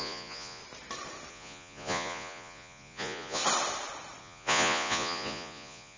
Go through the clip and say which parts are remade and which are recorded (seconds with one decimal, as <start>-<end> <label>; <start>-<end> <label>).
0.0-0.6 remade; 0.6-1.3 recorded; 1.3-3.4 remade; 3.4-4.2 recorded; 4.2-6.0 remade